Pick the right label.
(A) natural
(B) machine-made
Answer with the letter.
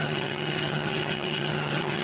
B